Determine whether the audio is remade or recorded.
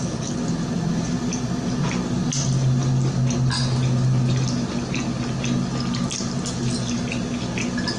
recorded